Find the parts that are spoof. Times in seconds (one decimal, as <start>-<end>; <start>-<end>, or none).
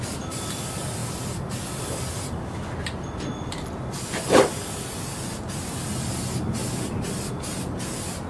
6.6-7.3